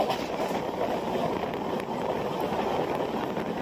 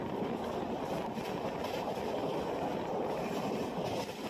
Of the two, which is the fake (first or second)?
first